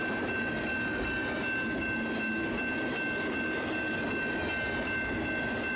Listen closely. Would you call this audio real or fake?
real